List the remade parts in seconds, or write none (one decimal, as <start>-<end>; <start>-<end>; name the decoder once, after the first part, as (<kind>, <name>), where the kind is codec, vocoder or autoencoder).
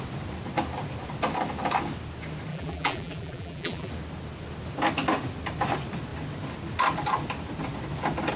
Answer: 2.5-3.9 (vocoder, BigVGAN v2)